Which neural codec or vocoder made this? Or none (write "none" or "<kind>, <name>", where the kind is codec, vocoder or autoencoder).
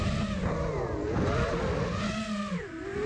none